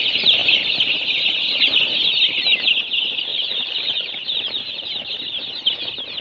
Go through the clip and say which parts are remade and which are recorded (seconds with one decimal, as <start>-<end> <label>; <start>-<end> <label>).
0.0-3.3 recorded; 3.3-5.1 remade; 5.1-6.2 recorded